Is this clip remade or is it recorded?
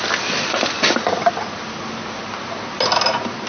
recorded